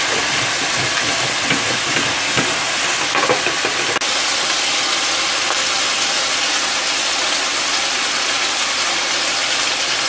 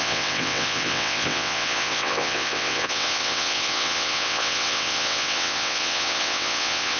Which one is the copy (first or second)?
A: second